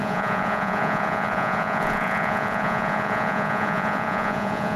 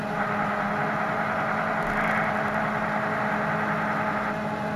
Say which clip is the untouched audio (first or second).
second